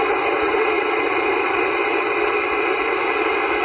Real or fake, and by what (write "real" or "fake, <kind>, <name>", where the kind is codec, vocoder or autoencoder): real